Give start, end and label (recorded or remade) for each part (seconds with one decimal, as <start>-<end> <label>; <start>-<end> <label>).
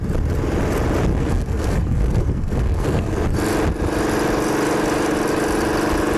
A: 0.0-1.1 recorded; 1.1-3.2 remade; 3.2-6.2 recorded